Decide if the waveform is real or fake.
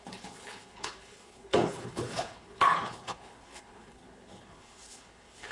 fake